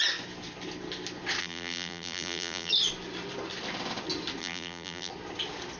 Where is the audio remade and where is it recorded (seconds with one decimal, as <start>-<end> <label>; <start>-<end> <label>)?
0.0-1.4 recorded; 1.4-2.7 remade; 2.7-4.4 recorded; 4.4-5.1 remade; 5.1-5.8 recorded